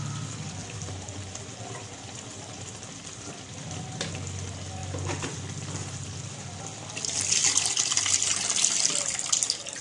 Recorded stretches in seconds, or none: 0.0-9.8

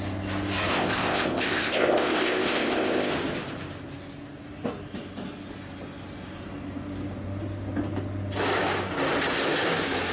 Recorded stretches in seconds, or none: 0.0-0.7; 3.1-10.1

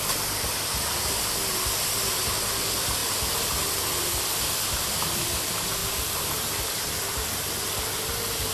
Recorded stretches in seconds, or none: 0.0-5.8; 6.7-8.5

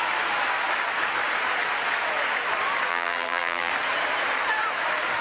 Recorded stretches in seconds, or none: 0.0-2.9; 3.7-5.2